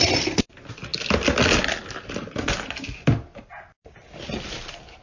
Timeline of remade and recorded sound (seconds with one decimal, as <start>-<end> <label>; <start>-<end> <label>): 0.0-5.0 recorded